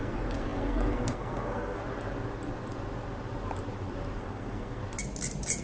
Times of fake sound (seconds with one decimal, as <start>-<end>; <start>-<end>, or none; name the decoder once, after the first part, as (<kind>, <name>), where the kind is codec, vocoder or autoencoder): 0.0-1.8 (codec, SNAC); 4.2-4.8